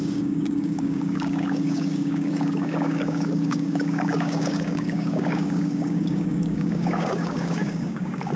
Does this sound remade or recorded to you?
remade